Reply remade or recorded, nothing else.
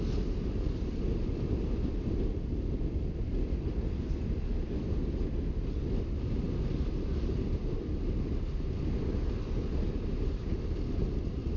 recorded